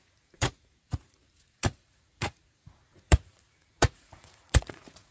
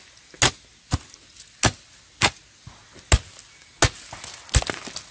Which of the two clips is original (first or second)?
second